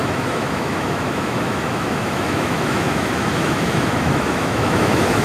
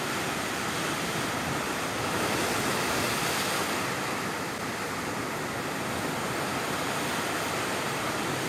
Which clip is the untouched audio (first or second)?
second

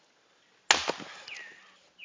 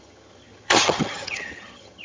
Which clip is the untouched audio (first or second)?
first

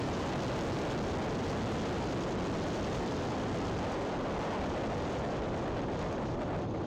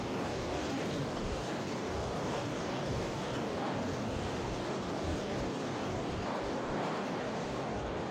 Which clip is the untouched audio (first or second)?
first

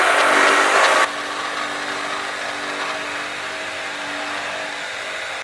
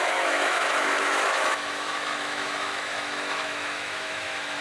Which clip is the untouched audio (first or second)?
first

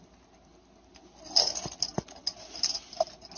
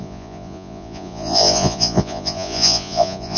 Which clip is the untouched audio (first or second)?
first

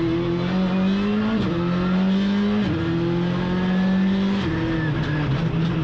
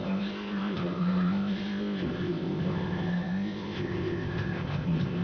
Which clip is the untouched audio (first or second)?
first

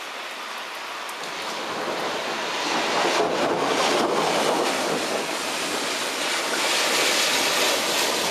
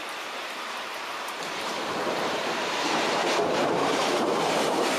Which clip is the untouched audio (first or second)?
first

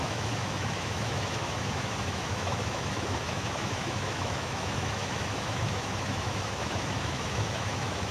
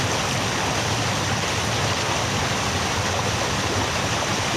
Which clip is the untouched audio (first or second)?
second